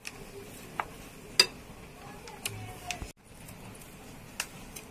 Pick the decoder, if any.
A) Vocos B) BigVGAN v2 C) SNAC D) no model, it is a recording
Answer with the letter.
D